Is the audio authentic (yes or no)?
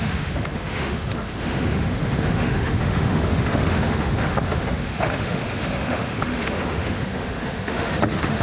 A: no